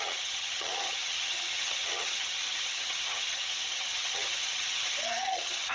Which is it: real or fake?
fake